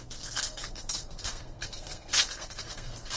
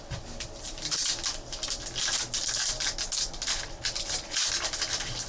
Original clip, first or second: second